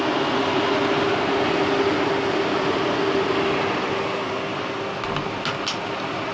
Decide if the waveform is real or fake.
real